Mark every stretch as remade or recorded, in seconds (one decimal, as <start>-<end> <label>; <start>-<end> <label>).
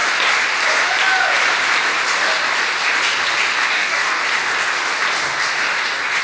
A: 0.0-3.7 recorded; 3.7-4.2 remade; 4.2-6.2 recorded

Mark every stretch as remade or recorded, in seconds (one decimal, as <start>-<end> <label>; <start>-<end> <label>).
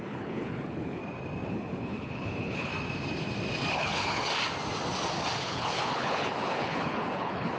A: 0.0-1.0 remade; 1.0-1.5 recorded; 1.5-2.7 remade; 2.7-3.7 recorded; 3.7-4.3 remade; 4.3-5.4 recorded; 5.4-7.6 remade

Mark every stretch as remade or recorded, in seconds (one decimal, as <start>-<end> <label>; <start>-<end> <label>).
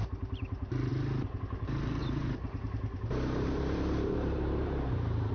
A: 0.0-2.0 recorded; 2.0-5.3 remade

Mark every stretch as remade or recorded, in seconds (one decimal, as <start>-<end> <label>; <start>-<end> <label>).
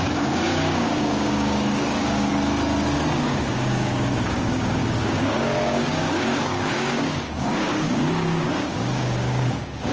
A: 0.0-2.3 remade; 2.3-3.1 recorded; 3.1-9.9 remade